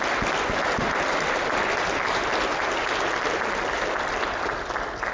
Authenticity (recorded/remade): recorded